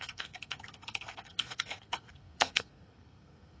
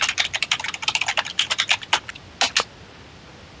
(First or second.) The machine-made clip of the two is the first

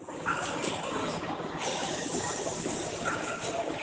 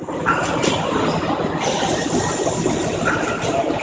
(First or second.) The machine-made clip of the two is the first